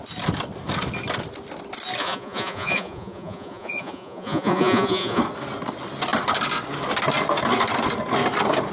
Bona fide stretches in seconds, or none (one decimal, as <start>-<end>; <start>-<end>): 0.0-2.0; 5.2-8.7